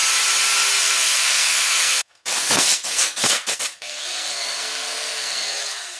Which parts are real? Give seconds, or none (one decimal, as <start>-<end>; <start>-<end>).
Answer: 0.0-0.8